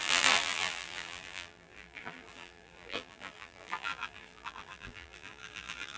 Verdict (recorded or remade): remade